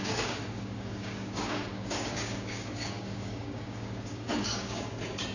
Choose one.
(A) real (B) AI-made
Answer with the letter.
B